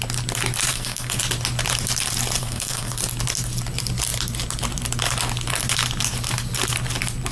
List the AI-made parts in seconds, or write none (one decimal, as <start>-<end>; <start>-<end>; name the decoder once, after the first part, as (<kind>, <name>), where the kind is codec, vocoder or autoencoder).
0.7-1.2 (codec, SNAC); 2.4-3.0